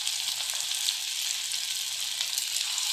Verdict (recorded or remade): recorded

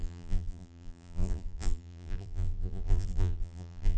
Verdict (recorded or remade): remade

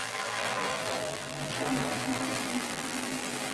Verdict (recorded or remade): remade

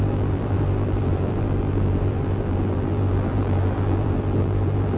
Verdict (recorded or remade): remade